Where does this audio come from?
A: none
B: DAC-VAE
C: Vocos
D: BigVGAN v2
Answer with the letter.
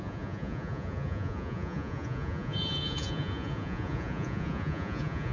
C